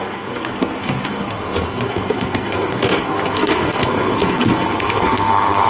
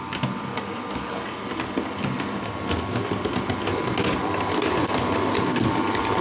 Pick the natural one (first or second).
second